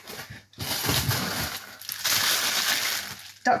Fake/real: real